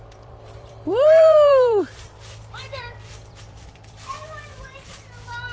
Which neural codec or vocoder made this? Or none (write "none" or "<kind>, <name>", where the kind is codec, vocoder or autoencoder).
vocoder, BigVGAN v2